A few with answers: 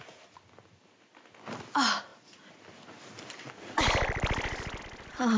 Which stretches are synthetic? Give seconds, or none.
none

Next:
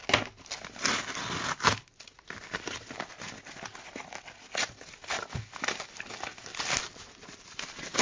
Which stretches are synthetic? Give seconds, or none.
6.5-8.0 (vocoder, BigVGAN v2)